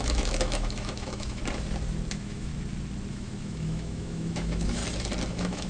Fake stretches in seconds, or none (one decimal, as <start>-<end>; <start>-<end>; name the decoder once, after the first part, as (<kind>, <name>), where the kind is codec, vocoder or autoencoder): 0.0-1.4 (autoencoder, DAC-VAE); 2.1-2.5; 3.1-4.8; 5.3-5.7